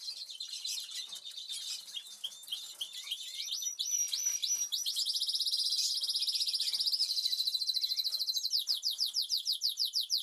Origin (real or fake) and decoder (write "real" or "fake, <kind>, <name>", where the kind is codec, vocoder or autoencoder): real